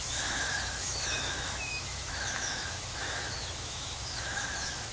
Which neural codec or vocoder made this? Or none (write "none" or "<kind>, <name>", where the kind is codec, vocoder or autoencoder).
autoencoder, DAC-VAE